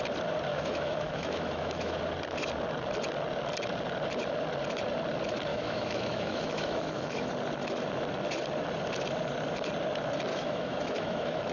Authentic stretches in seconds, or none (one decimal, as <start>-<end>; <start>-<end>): 0.0-0.5; 2.0-5.5; 7.3-10.3